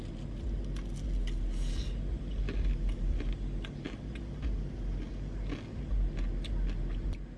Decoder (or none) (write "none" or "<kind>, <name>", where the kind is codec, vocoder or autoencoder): none